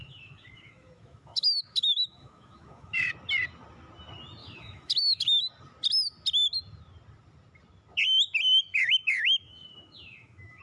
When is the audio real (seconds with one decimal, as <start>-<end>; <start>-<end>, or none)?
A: 3.1-4.4; 5.4-8.7